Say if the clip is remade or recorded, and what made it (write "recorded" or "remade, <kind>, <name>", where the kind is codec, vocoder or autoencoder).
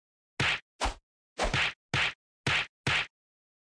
recorded